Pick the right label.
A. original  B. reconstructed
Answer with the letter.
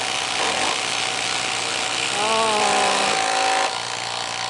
A